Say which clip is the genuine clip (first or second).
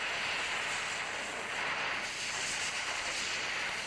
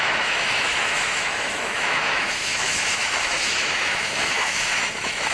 first